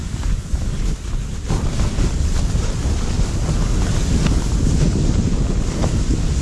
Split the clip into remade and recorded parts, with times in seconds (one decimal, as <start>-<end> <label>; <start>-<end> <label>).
0.0-0.9 remade; 0.9-6.4 recorded